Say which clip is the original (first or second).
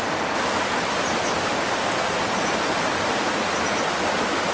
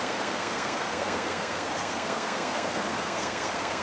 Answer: first